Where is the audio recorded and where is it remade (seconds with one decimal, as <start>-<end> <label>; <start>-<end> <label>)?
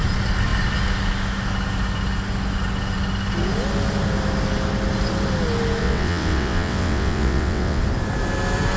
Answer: 0.0-5.8 recorded; 5.8-7.8 remade; 7.8-8.8 recorded